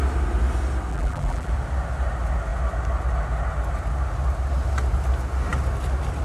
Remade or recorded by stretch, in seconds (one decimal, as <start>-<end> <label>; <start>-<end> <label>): 0.0-0.9 recorded; 0.9-1.5 remade; 1.5-6.2 recorded